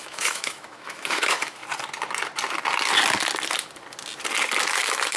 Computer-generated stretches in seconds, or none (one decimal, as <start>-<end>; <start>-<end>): 0.0-1.6; 4.7-5.2